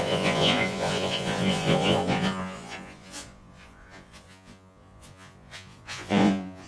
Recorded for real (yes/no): no